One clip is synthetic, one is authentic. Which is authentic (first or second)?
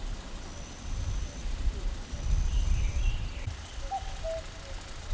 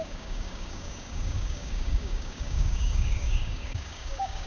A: first